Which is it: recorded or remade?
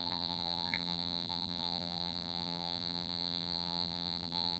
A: remade